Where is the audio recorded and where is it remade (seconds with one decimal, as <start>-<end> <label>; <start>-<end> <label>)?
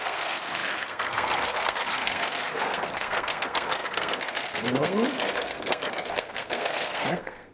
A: 0.0-7.5 remade